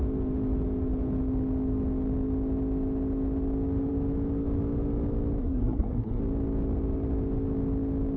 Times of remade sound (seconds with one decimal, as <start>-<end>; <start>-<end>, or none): 5.4-6.2